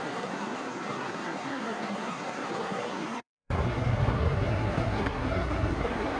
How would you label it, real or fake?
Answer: fake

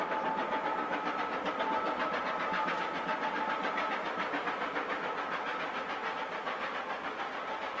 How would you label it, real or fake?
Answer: real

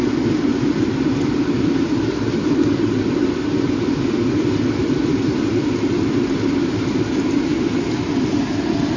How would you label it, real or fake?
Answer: real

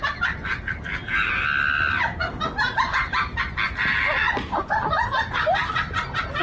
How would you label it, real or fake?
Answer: real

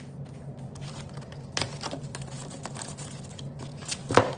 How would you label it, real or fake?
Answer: real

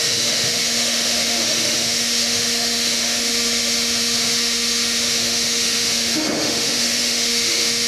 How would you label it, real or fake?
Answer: fake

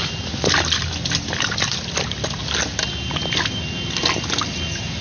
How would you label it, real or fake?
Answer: real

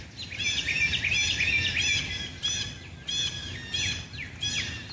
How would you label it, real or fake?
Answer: real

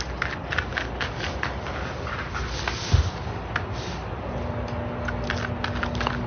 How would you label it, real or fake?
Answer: real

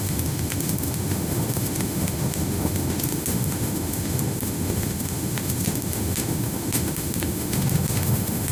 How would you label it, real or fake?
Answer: fake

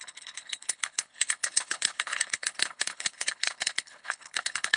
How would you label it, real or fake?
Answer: fake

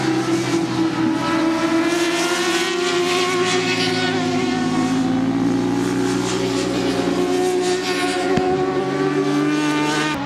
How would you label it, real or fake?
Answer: real